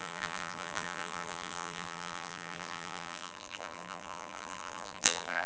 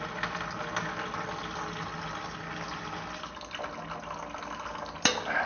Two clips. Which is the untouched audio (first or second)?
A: second